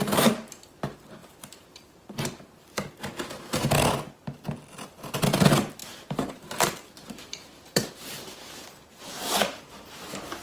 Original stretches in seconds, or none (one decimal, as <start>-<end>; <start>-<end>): 0.0-1.2; 3.7-5.8; 9.6-10.4